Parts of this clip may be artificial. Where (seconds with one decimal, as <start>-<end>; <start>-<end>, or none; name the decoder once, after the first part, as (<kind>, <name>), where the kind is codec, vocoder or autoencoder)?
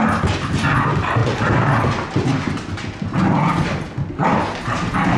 none